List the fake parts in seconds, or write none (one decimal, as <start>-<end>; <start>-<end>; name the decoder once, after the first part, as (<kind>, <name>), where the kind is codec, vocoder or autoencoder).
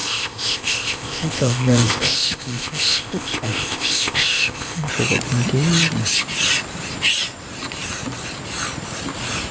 0.0-4.9 (codec, ZipCodec)